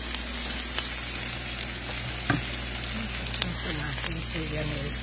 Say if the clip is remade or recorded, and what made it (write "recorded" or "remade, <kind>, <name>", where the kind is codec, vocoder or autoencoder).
recorded